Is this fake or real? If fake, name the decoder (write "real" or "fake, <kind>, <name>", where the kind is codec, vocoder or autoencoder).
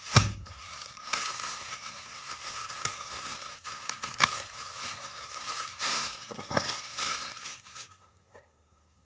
fake, codec, SNAC